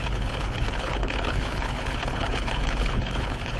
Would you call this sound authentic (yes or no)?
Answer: no